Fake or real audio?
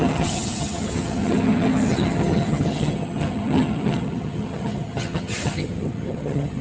fake